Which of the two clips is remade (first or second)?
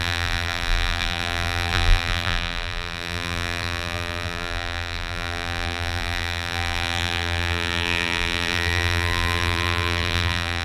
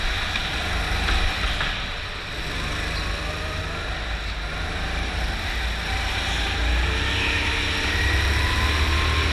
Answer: first